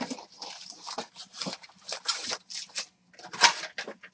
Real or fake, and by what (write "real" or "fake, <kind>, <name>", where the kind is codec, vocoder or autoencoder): real